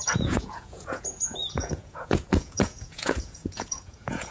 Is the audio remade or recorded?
remade